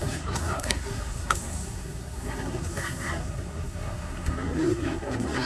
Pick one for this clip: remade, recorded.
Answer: remade